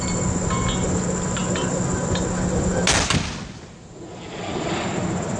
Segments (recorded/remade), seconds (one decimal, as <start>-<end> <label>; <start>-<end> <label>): 0.0-5.4 recorded